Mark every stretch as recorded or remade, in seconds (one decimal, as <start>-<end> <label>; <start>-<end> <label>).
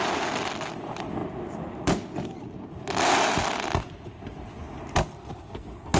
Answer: 0.0-5.2 recorded; 5.2-6.0 remade